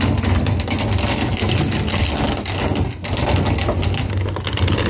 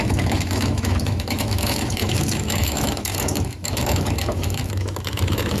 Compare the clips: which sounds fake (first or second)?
second